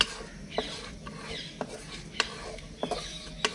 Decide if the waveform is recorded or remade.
recorded